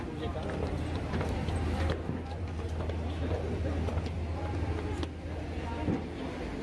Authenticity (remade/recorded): recorded